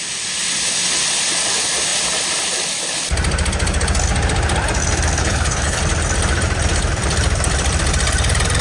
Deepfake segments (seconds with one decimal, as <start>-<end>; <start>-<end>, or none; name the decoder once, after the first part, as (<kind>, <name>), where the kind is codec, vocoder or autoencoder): 5.2-5.8 (codec, HILCodec)